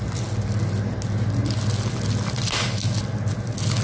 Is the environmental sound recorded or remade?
recorded